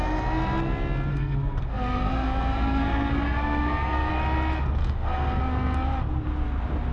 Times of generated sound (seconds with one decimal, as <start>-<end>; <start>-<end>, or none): 1.1-4.1; 4.8-5.4